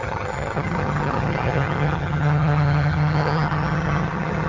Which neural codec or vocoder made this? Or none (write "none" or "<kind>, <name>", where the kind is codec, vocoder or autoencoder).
vocoder, HiFi-GAN